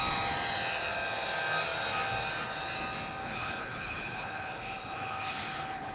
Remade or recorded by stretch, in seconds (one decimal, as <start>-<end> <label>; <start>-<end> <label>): 0.0-3.2 recorded; 3.2-5.9 remade